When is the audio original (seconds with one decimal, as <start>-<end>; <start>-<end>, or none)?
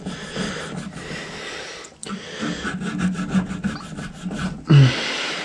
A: 0.0-2.0; 3.0-5.4